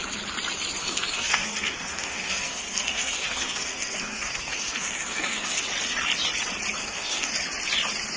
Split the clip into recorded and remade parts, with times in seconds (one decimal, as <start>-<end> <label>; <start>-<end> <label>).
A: 0.0-0.8 recorded; 0.8-5.6 remade; 5.6-6.8 recorded; 6.8-7.3 remade; 7.3-8.2 recorded